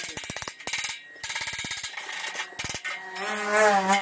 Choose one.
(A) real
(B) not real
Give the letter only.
A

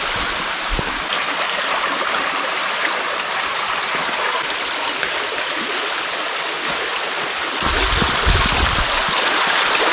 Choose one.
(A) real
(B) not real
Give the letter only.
B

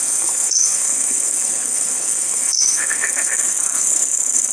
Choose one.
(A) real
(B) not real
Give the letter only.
B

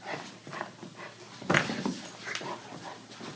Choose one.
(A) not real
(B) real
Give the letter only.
B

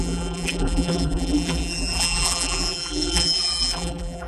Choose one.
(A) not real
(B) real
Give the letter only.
A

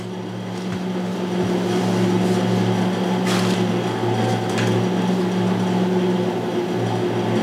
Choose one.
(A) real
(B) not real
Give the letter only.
A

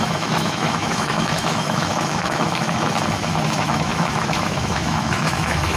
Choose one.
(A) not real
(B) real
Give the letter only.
A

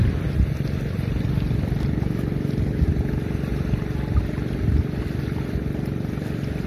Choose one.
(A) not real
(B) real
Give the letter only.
B